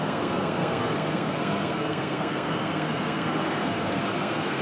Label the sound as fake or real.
fake